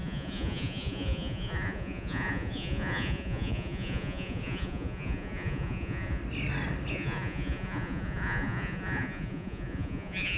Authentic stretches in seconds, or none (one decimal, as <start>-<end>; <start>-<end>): 6.2-6.9